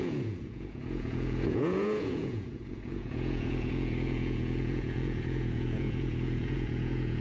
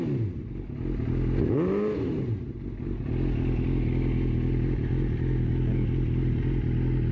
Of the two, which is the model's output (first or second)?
first